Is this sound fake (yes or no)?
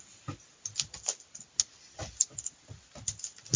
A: no